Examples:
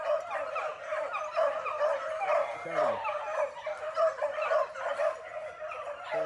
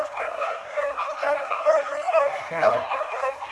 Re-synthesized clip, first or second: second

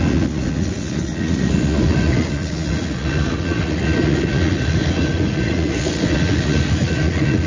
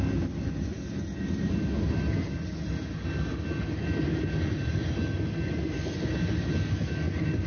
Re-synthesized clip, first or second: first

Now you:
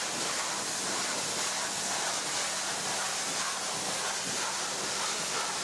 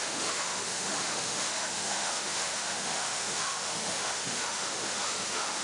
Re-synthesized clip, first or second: second